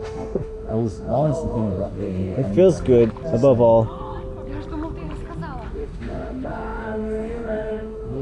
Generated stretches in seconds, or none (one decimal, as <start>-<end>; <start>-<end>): 0.0-2.5; 5.7-8.2